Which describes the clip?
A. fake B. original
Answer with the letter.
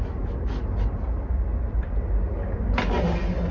B